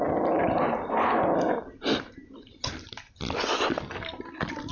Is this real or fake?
real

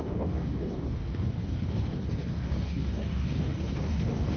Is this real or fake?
fake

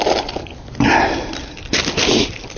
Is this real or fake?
real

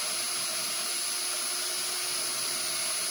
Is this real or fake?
real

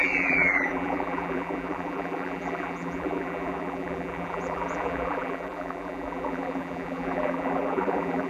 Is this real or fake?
fake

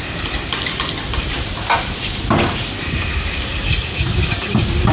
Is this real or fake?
real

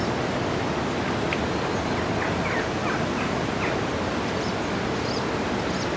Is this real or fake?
real